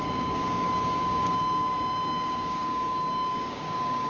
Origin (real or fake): fake